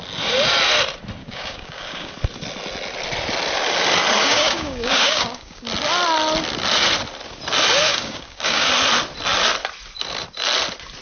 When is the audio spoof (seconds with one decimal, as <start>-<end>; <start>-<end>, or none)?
1.2-2.1; 4.2-5.6; 7.9-8.7